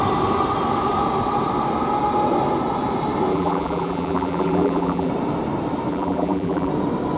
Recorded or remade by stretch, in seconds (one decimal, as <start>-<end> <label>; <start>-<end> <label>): 0.0-3.3 recorded; 3.3-5.1 remade; 5.1-5.9 recorded; 5.9-6.7 remade; 6.7-7.2 recorded